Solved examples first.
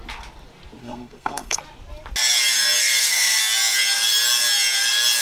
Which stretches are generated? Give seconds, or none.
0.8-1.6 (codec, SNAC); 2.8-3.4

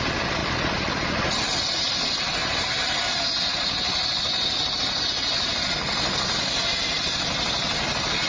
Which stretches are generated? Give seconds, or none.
none

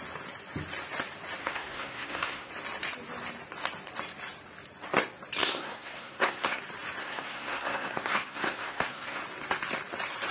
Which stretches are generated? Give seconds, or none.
1.4-2.5 (codec, SNAC); 5.4-6.6; 7.0-9.2

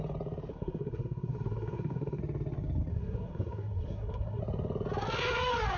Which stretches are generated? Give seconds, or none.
0.5-2.2 (codec, SNAC); 2.9-4.4

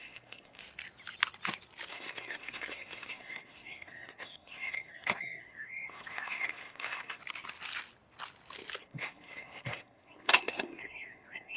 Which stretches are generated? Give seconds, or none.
0.0-0.6 (codec, SNAC); 1.9-7.2; 8.8-11.6